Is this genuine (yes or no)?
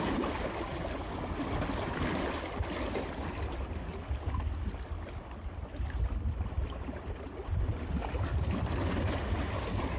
yes